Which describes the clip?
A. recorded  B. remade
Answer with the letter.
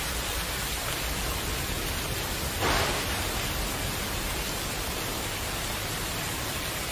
A